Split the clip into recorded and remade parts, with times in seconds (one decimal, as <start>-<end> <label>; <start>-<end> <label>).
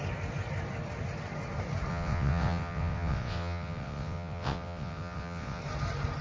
0.0-1.9 recorded; 1.9-5.6 remade; 5.6-6.2 recorded